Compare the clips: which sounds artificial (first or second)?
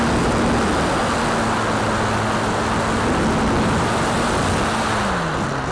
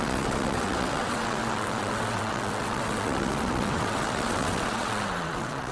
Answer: second